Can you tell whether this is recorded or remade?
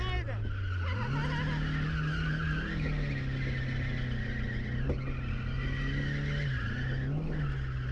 recorded